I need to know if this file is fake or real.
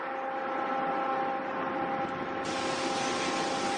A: real